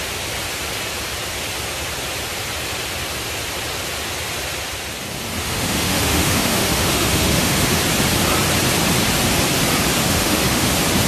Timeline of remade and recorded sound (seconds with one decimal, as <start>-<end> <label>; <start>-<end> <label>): 0.0-5.4 recorded; 5.4-7.8 remade; 7.8-10.0 recorded; 10.0-10.7 remade; 10.7-11.1 recorded